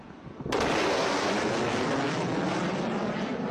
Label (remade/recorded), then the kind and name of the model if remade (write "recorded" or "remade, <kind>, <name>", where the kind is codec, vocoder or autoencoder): recorded